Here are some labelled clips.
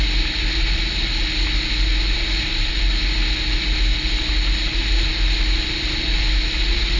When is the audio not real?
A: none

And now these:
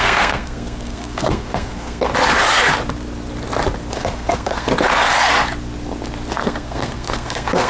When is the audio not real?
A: 0.0-2.1 (codec, SNAC); 3.9-4.7; 6.3-7.7

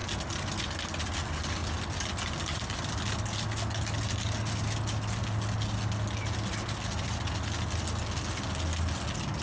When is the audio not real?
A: none